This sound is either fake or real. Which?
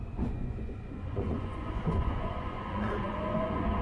fake